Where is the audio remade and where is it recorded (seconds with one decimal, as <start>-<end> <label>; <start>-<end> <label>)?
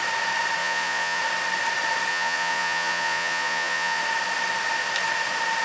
0.0-0.6 recorded; 0.6-1.2 remade; 1.2-2.1 recorded; 2.1-4.0 remade; 4.0-5.6 recorded